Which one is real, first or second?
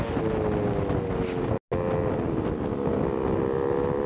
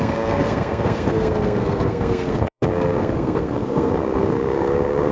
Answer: first